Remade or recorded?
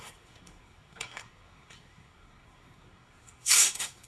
remade